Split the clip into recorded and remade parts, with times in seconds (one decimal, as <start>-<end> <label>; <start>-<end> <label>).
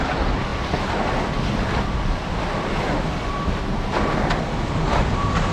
0.0-0.5 recorded; 0.5-3.5 remade; 3.5-5.5 recorded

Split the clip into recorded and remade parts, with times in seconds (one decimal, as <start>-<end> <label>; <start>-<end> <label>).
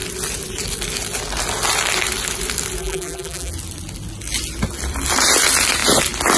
0.0-2.8 recorded; 2.8-3.5 remade; 3.5-6.4 recorded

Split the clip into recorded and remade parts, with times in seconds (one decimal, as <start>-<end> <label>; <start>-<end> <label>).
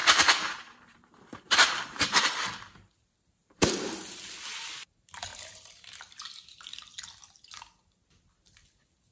0.0-3.9 remade; 3.9-5.3 recorded; 5.3-6.0 remade; 6.0-9.1 recorded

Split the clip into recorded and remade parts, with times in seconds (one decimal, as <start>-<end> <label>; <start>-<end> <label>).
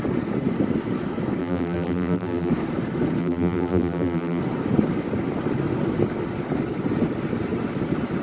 0.0-1.4 recorded; 1.4-2.5 remade; 2.5-3.2 recorded; 3.2-4.4 remade; 4.4-8.2 recorded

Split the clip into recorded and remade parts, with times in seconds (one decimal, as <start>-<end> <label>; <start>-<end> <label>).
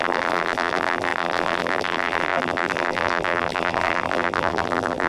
0.0-5.1 remade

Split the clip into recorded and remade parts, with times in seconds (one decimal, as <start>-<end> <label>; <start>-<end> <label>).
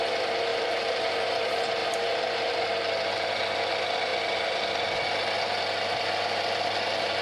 0.0-0.5 recorded; 0.5-1.4 remade; 1.4-1.8 recorded; 1.8-2.6 remade; 2.6-7.2 recorded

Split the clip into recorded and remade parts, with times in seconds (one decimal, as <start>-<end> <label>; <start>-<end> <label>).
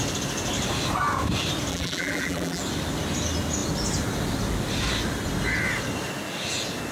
0.0-1.7 recorded; 1.7-2.6 remade; 2.6-6.9 recorded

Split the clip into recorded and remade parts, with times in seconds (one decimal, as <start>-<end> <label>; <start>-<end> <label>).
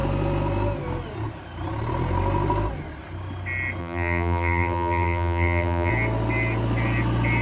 0.0-3.8 recorded; 3.8-5.9 remade; 5.9-7.4 recorded